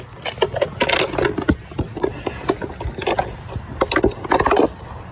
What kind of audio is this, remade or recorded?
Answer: recorded